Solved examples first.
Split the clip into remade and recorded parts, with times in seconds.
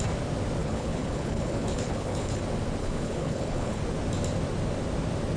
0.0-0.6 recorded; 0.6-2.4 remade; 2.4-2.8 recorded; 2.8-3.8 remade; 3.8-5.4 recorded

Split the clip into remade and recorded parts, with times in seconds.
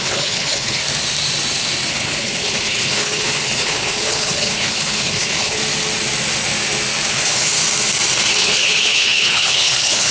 0.0-0.8 remade; 0.8-1.9 recorded; 1.9-5.6 remade; 5.6-7.1 recorded; 7.1-7.6 remade; 7.6-8.3 recorded; 8.3-10.1 remade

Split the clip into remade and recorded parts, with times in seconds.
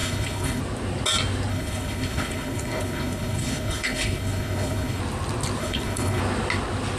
0.0-0.6 remade; 0.6-1.5 recorded; 1.5-5.0 remade; 5.0-5.6 recorded; 5.6-6.2 remade; 6.2-7.0 recorded